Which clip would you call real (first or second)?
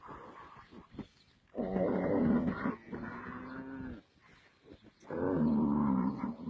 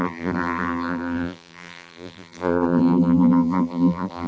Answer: first